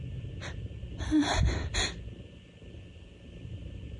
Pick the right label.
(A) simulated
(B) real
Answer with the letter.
B